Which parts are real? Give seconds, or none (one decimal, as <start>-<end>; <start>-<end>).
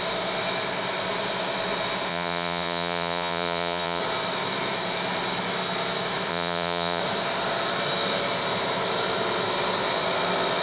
0.0-2.1; 4.0-6.3; 7.0-10.6